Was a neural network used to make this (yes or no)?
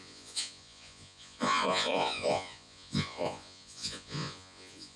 yes